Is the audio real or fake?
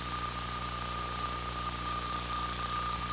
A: real